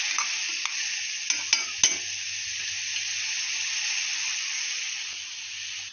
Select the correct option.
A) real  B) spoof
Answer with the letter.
A